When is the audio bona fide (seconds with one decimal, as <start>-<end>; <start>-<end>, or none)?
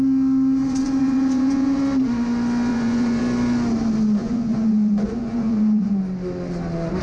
0.0-0.6; 1.8-2.7; 3.2-4.2; 6.0-7.0